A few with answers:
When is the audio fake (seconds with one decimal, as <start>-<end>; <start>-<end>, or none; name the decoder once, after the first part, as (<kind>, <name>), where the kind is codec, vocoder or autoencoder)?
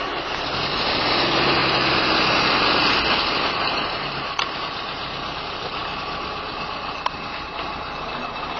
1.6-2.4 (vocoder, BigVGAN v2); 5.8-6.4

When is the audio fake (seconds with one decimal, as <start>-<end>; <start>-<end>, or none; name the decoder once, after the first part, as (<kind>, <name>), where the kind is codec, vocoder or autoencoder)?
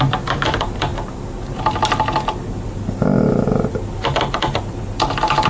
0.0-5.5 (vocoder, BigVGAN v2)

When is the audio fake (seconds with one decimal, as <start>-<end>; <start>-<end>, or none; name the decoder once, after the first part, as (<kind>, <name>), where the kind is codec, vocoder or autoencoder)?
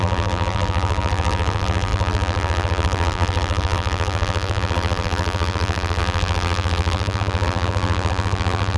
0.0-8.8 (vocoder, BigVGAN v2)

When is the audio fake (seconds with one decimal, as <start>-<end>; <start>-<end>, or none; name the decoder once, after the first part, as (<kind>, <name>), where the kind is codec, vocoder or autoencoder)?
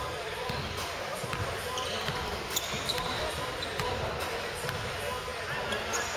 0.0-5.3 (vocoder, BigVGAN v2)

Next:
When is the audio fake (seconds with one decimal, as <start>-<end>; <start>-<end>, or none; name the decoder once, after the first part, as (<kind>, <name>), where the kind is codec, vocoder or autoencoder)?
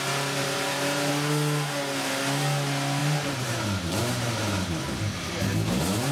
0.4-1.1 (vocoder, BigVGAN v2); 3.0-5.0